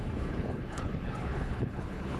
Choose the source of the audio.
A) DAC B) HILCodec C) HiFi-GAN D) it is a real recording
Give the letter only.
B